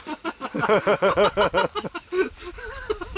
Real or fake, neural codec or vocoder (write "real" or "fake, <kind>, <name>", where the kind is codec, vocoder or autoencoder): real